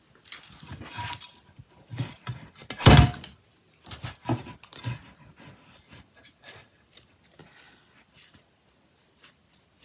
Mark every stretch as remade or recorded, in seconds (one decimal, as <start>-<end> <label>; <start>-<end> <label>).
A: 0.0-9.8 recorded